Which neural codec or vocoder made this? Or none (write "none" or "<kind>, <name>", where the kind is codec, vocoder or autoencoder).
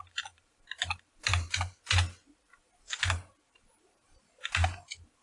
vocoder, BigVGAN v2